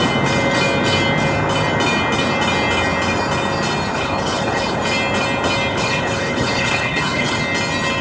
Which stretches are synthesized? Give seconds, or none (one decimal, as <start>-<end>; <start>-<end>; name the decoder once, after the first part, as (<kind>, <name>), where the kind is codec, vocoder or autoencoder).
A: 3.9-4.8 (codec, HILCodec); 5.7-7.4